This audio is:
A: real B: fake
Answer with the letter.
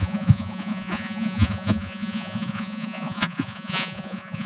B